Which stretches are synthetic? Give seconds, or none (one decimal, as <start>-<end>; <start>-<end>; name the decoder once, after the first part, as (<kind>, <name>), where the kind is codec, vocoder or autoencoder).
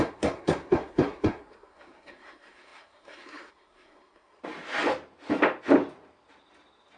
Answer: 0.0-4.4 (codec, SNAC)